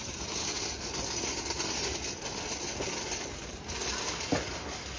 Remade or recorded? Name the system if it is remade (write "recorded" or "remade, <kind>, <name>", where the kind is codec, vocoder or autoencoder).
recorded